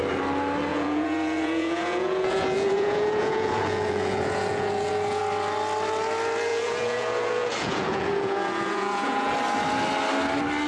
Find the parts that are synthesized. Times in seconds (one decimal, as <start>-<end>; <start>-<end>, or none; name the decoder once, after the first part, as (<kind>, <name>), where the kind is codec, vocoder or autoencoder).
0.7-5.2 (vocoder, Vocos); 6.5-9.3